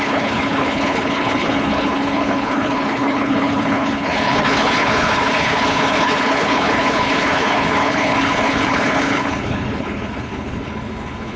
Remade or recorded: remade